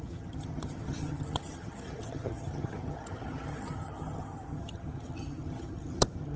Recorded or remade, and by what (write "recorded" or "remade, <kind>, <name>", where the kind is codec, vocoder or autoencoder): remade, vocoder, HiFi-GAN